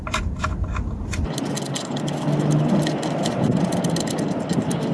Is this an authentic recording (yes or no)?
yes